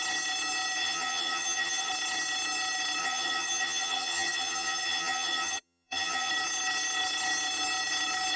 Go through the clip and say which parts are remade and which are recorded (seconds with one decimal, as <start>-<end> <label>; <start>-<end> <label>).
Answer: 0.0-0.8 recorded; 0.8-1.9 remade; 1.9-3.0 recorded; 3.0-6.3 remade; 6.3-8.4 recorded